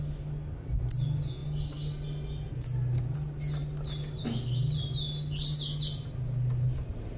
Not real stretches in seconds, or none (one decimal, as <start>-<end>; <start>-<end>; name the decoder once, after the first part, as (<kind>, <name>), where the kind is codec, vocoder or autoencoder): none